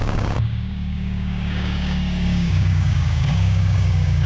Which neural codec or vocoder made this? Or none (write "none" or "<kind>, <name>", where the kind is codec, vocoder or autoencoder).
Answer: codec, DAC